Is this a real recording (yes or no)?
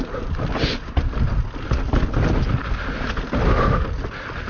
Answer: yes